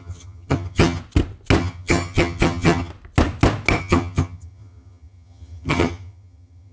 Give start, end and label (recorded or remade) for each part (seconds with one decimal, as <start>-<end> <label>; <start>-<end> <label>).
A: 0.0-1.0 remade; 1.0-1.6 recorded; 1.6-2.9 remade; 2.9-3.8 recorded; 3.8-6.7 remade

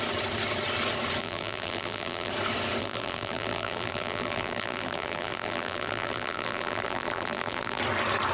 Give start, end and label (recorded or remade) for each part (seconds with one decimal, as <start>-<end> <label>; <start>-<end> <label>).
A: 0.0-1.2 recorded; 1.2-2.3 remade; 2.3-2.8 recorded; 2.8-7.8 remade; 7.8-8.3 recorded

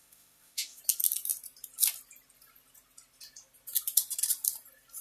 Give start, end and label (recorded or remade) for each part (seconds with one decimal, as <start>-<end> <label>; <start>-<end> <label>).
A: 0.0-0.8 remade; 0.8-5.0 recorded

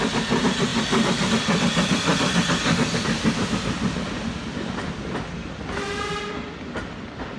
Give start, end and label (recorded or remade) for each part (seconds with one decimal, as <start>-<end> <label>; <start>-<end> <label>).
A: 0.0-7.4 recorded

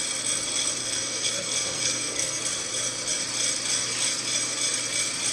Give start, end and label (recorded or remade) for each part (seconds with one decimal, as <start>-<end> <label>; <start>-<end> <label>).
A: 0.0-0.8 recorded; 0.8-2.4 remade; 2.4-5.3 recorded

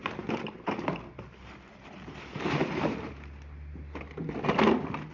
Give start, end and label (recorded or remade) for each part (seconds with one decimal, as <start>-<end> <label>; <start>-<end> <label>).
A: 0.0-3.1 remade; 3.1-5.1 recorded

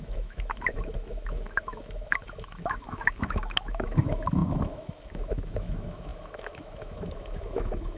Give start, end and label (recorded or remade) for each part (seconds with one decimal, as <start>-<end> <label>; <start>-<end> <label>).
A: 0.0-8.0 remade